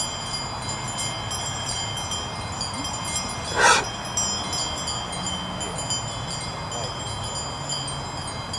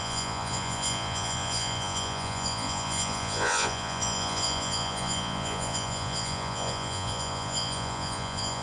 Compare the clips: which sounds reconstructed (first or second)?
second